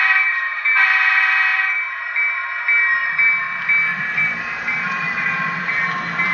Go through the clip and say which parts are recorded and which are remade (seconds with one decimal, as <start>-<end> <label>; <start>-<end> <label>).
0.0-2.4 remade; 2.4-3.9 recorded; 3.9-6.3 remade